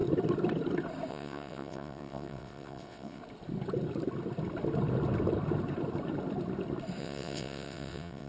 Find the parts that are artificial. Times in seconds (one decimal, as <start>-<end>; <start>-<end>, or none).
1.1-3.2; 7.0-8.3